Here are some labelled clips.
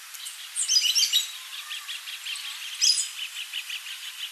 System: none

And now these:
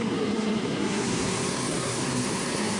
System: codec, SNAC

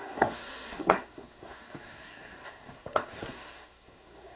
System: codec, SNAC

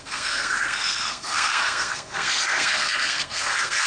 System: codec, SNAC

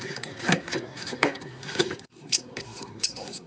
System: codec, SNAC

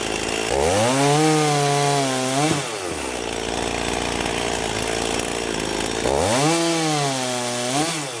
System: none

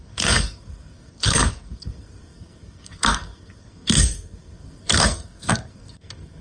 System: codec, SNAC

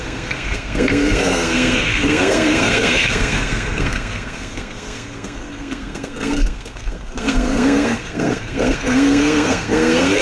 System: codec, SNAC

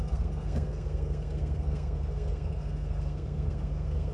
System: codec, SNAC